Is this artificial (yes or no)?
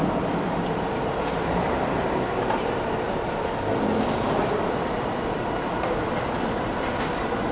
yes